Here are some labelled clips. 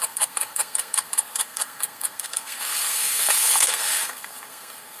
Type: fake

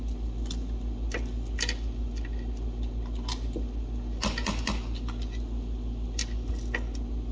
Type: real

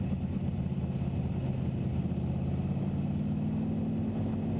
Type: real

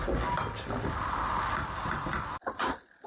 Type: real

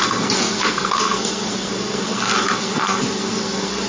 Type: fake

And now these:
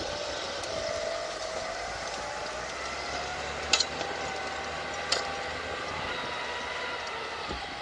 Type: real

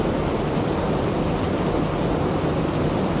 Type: real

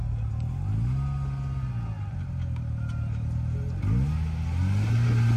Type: real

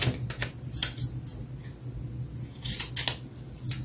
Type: real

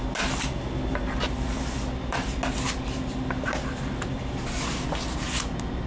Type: real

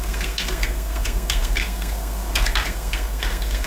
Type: fake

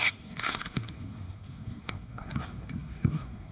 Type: fake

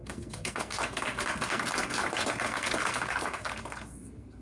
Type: fake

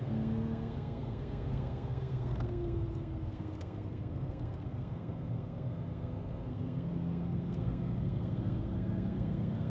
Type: fake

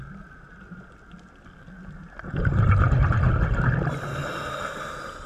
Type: real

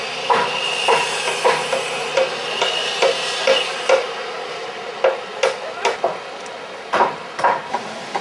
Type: real